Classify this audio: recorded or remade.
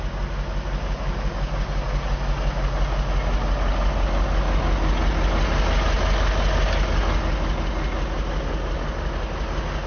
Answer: recorded